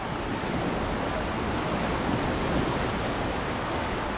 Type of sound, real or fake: real